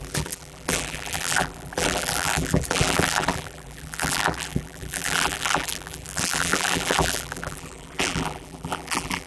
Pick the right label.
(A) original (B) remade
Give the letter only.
B